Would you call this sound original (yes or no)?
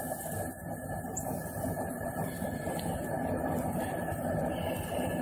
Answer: yes